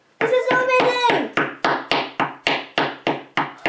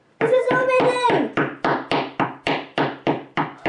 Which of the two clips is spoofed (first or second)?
second